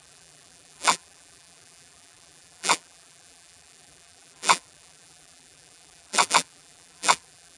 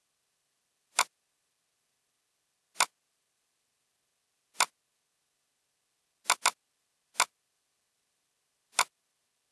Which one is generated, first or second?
first